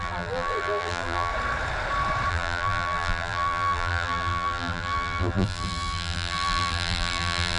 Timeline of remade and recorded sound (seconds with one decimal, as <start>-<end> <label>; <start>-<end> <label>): 0.0-1.3 remade; 1.3-2.3 recorded; 2.3-7.6 remade